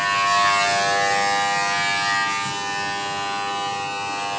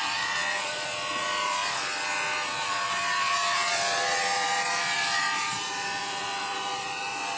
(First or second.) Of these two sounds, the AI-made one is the second